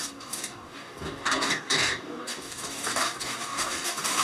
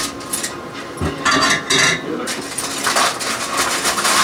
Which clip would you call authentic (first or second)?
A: second